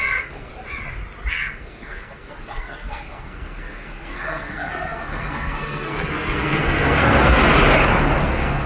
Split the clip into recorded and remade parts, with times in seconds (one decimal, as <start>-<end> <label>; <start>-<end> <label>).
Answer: 0.0-0.5 remade; 0.5-1.3 recorded; 1.3-7.4 remade; 7.4-8.2 recorded; 8.2-8.7 remade